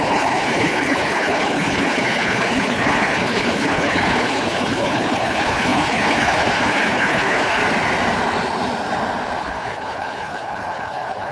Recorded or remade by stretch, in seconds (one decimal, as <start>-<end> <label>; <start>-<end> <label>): 0.0-7.6 remade; 7.6-9.4 recorded; 9.4-11.3 remade